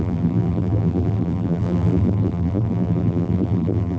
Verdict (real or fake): fake